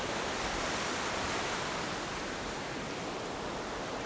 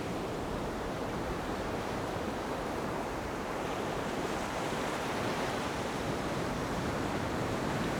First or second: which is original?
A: first